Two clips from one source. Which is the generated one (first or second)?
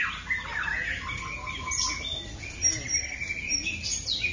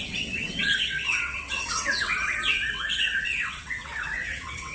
second